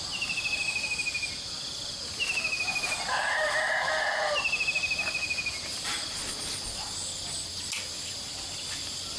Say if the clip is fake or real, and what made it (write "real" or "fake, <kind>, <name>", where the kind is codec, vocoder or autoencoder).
real